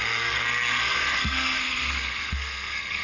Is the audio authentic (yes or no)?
no